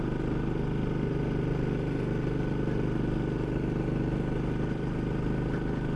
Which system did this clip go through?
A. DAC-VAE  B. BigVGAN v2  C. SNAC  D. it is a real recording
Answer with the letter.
D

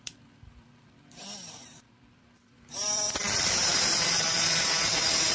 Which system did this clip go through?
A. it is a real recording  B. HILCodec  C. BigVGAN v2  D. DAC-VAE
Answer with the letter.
C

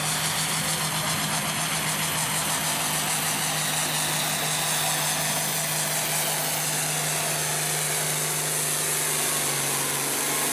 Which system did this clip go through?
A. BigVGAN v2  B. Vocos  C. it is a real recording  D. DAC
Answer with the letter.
C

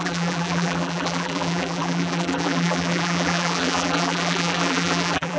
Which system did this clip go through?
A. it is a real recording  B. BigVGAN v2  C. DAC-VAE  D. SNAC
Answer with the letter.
B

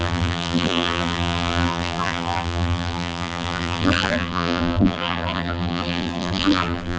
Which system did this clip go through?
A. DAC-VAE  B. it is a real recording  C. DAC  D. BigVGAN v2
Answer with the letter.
D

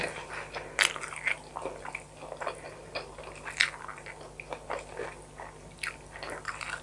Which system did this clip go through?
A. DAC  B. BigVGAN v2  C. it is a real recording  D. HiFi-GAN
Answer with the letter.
C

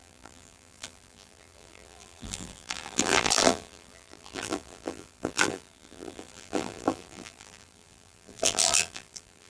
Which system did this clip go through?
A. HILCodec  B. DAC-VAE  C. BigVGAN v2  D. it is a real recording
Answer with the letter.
C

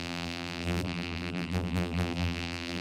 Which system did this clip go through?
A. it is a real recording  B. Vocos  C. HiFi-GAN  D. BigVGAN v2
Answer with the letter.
D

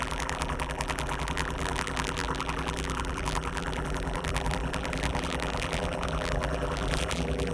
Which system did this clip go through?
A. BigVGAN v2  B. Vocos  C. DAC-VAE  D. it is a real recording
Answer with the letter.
A